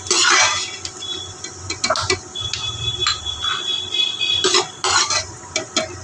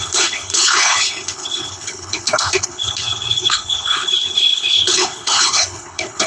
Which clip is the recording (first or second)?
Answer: first